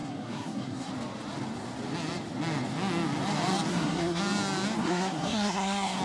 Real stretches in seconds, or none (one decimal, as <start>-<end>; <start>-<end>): 0.9-3.7; 4.2-4.8